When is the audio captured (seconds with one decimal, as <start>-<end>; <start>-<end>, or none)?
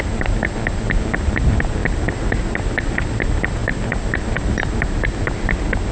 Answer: 0.0-5.9